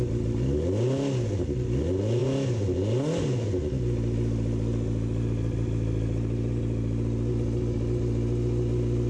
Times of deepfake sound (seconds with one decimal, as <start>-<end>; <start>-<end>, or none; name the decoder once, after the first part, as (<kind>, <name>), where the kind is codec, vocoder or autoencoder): none

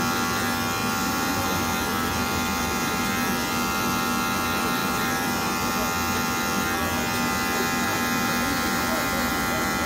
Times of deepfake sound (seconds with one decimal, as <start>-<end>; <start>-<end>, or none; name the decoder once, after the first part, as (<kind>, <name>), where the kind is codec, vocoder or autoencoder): 0.8-3.0 (vocoder, BigVGAN v2); 4.8-5.7

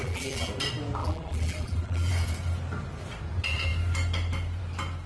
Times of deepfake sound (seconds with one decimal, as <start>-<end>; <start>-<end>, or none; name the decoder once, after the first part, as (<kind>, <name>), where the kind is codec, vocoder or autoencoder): 0.0-0.5 (vocoder, BigVGAN v2); 1.0-2.1

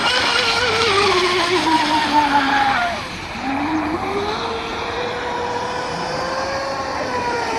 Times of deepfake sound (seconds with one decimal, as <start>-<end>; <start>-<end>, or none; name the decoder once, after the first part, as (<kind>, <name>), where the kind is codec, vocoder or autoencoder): 2.8-4.2 (vocoder, BigVGAN v2); 4.7-6.3

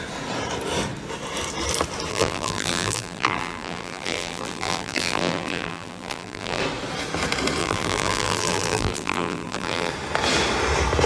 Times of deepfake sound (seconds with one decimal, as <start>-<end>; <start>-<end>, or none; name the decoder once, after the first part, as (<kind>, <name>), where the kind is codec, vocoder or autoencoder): 2.1-6.6 (vocoder, BigVGAN v2); 7.6-9.9

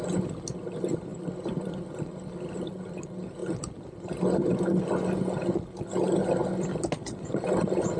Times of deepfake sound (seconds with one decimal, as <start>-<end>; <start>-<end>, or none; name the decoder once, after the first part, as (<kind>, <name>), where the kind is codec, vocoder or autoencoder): 1.1-2.7 (vocoder, BigVGAN v2)

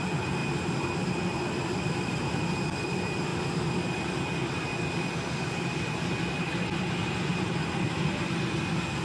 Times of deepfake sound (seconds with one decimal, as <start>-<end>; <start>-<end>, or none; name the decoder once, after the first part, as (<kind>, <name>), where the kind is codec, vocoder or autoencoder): 3.3-4.0 (vocoder, BigVGAN v2); 7.3-8.6